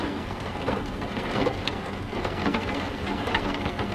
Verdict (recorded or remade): remade